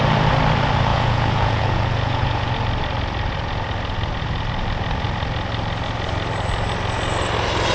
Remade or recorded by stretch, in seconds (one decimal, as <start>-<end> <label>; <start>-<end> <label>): 0.0-0.9 recorded; 0.9-2.5 remade; 2.5-7.7 recorded